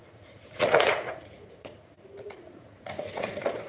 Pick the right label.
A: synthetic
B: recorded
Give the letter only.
A